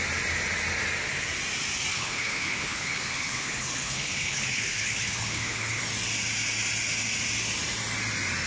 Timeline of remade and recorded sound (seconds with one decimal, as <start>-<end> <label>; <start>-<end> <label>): 0.0-1.9 recorded; 1.9-5.8 remade; 5.8-8.5 recorded